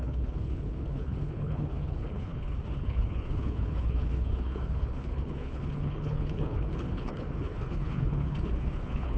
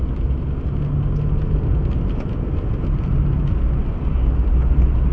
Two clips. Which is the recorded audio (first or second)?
second